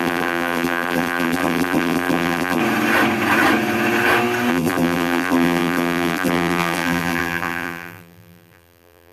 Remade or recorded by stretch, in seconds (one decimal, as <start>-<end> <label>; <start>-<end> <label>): 0.0-2.6 remade; 2.6-4.5 recorded; 4.5-9.1 remade